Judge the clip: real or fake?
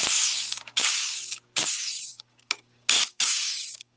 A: fake